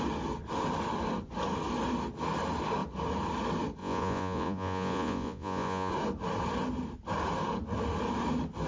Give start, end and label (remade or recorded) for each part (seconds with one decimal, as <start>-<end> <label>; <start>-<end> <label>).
0.0-3.8 recorded; 3.8-5.9 remade; 5.9-8.7 recorded